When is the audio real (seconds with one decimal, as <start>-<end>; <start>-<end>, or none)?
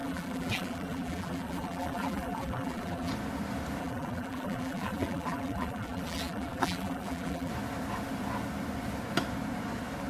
3.1-3.8; 7.5-10.1